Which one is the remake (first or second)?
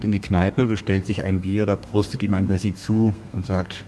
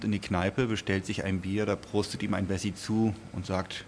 first